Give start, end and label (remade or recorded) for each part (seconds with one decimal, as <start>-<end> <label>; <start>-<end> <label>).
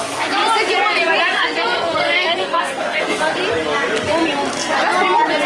0.0-0.4 remade; 0.4-1.2 recorded; 1.2-3.4 remade; 3.4-5.5 recorded